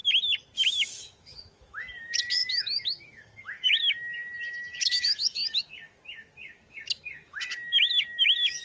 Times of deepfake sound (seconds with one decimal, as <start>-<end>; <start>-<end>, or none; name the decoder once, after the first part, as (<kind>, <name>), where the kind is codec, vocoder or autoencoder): 0.7-8.6 (autoencoder, DAC-VAE)